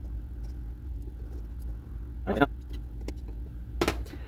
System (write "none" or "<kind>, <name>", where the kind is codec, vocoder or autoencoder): none